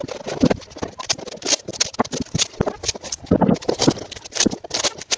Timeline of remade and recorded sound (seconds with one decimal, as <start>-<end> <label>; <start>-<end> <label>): 0.0-5.2 recorded